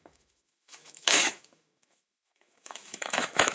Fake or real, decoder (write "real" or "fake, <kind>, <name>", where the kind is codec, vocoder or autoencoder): fake, autoencoder, DAC-VAE